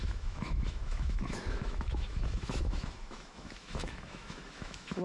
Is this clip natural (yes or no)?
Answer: no